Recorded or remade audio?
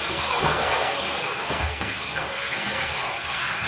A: remade